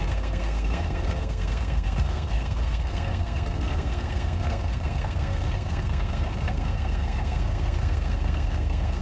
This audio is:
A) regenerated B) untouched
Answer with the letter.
A